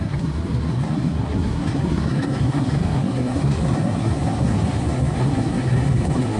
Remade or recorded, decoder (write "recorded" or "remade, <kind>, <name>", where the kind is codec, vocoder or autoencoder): remade, codec, SNAC